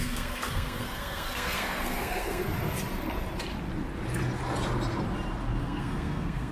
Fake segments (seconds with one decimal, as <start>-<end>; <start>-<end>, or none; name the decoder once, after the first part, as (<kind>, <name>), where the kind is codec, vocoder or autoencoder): 0.0-2.4 (codec, SNAC); 5.6-6.5